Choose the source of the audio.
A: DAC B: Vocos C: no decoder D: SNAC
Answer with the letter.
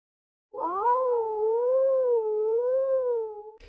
D